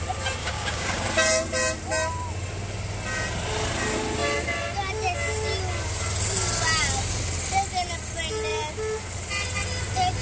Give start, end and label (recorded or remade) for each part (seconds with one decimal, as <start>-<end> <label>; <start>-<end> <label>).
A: 0.0-0.4 recorded; 0.4-1.0 remade; 1.0-10.2 recorded

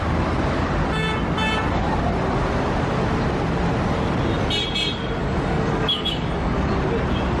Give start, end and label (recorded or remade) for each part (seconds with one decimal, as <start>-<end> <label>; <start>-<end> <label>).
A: 0.0-5.2 recorded; 5.2-6.7 remade; 6.7-7.4 recorded

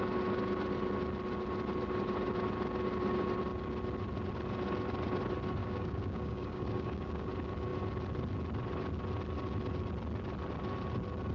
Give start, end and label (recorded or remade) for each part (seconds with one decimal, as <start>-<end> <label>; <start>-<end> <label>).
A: 0.0-5.6 recorded; 5.6-7.3 remade; 7.3-11.3 recorded